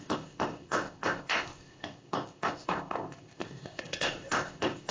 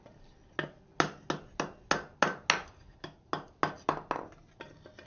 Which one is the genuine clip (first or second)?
second